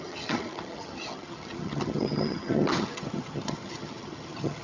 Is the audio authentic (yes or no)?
no